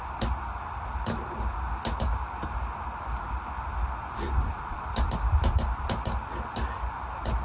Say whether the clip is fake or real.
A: real